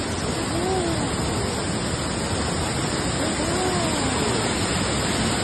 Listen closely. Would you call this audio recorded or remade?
recorded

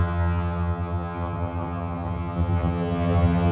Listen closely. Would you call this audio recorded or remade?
remade